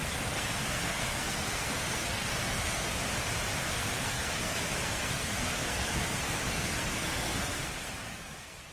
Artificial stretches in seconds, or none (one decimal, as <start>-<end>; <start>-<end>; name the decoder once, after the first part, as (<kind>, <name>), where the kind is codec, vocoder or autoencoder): 0.0-2.9 (codec, SNAC); 3.6-8.7